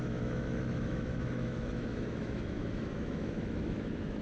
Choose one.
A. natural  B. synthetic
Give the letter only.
B